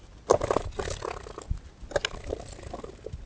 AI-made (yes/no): no